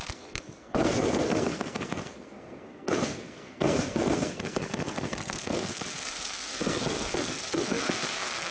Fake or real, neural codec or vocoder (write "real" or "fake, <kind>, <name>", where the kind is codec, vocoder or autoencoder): fake, codec, SNAC